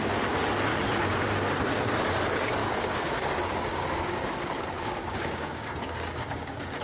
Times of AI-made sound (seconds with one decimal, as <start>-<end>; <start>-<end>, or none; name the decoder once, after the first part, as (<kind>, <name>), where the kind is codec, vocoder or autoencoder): 0.7-1.6 (codec, DAC); 2.6-6.8